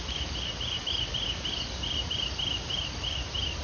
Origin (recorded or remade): recorded